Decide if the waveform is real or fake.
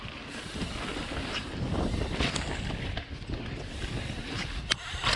fake